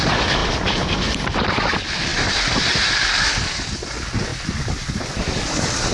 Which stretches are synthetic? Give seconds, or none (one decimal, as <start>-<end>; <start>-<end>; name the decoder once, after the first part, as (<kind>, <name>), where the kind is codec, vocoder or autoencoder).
0.4-1.5 (vocoder, BigVGAN v2); 2.1-3.1; 4.3-5.9